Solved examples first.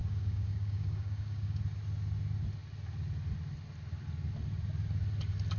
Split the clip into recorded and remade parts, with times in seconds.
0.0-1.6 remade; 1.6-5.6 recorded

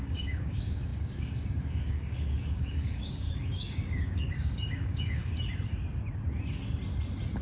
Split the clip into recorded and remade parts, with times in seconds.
0.0-5.2 remade; 5.2-7.4 recorded

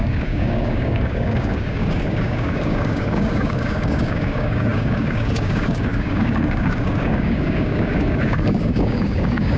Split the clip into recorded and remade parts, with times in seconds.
0.0-9.6 remade